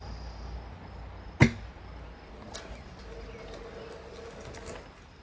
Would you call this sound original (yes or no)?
yes